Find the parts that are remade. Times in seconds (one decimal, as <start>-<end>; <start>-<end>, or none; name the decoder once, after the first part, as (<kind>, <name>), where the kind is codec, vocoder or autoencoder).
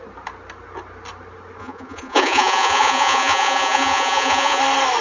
1.6-4.6 (vocoder, Vocos)